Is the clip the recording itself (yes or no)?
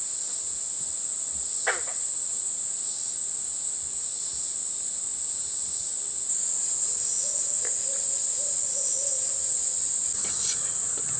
yes